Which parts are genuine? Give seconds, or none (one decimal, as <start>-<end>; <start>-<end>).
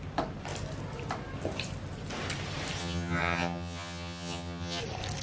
0.0-2.8; 4.8-5.2